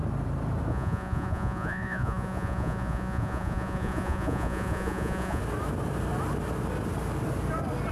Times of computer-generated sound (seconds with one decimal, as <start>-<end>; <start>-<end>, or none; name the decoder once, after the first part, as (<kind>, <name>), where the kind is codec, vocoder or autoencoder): 0.7-5.4 (vocoder, Vocos)